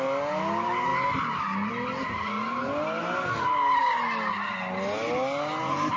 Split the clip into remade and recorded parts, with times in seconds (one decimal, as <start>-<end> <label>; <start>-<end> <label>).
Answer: 0.0-6.0 recorded